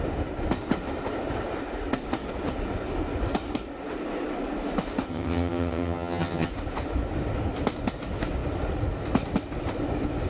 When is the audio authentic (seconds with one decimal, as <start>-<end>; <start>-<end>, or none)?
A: 0.0-5.1; 6.5-10.3

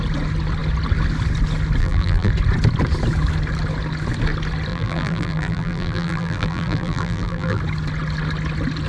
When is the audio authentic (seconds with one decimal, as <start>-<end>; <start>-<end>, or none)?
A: 0.0-1.8; 2.3-4.7; 7.6-8.9